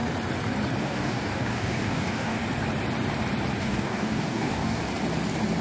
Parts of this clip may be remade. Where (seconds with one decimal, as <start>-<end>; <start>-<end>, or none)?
0.8-2.4; 3.6-4.8